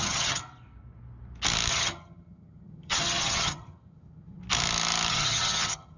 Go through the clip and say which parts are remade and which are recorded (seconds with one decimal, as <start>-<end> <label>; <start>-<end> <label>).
0.0-0.4 remade; 0.4-1.7 recorded; 1.7-4.4 remade; 4.4-5.1 recorded; 5.1-6.0 remade